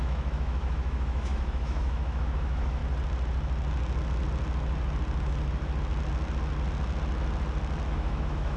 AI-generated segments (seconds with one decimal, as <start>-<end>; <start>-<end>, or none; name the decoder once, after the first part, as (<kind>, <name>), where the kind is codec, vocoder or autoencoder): 0.0-2.8 (autoencoder, DAC-VAE); 7.9-8.6